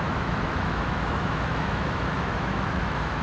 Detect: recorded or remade remade